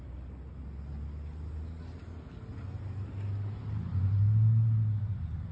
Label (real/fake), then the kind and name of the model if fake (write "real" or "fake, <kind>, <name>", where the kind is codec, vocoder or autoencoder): real